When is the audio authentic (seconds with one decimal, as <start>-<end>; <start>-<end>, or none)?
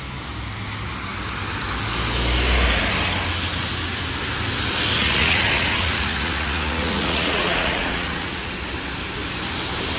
0.0-5.0; 8.5-10.0